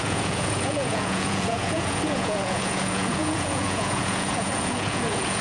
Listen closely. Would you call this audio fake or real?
fake